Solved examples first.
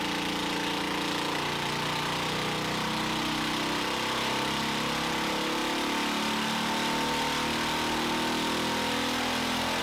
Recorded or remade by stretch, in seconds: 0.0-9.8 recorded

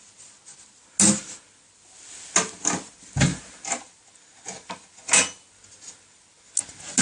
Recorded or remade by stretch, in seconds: 0.0-7.0 recorded

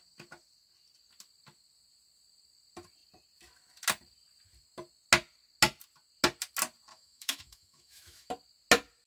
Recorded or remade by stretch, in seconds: 0.0-6.9 recorded; 6.9-8.3 remade; 8.3-9.1 recorded

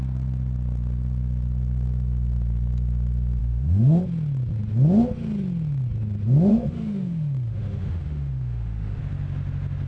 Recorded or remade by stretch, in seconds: 0.0-3.4 recorded; 3.4-4.0 remade; 4.0-6.5 recorded; 6.5-9.0 remade; 9.0-9.9 recorded